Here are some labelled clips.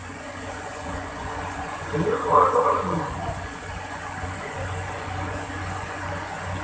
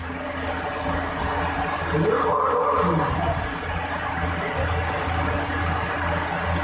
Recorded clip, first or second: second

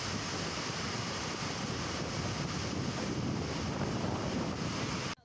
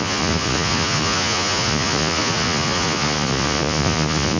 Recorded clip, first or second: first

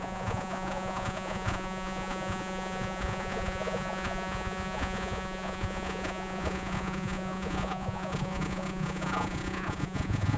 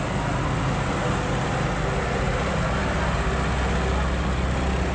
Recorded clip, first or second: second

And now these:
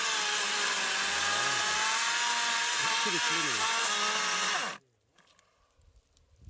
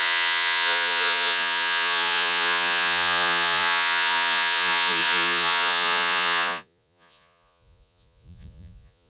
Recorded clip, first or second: first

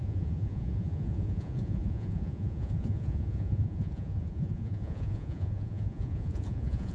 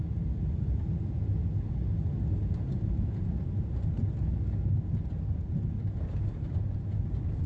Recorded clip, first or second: second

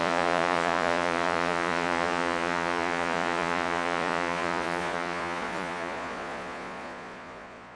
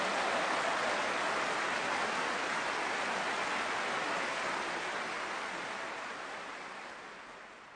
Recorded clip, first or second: second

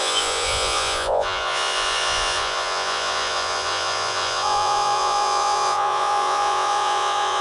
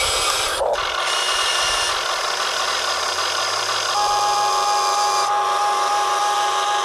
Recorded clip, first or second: second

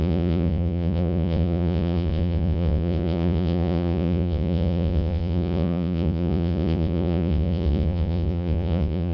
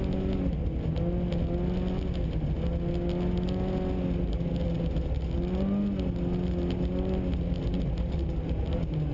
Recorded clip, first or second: second